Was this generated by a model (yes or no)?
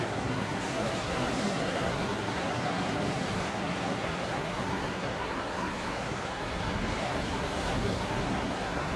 yes